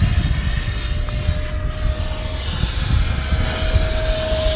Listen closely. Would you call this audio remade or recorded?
recorded